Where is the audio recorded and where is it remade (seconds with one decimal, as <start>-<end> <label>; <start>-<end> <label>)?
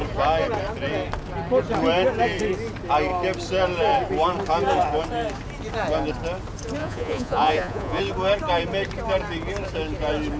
0.0-6.8 recorded; 6.8-8.0 remade; 8.0-10.4 recorded